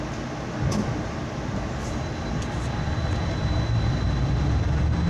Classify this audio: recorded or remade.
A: recorded